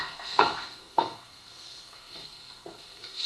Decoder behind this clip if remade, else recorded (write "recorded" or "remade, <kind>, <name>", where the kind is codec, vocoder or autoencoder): remade, codec, SNAC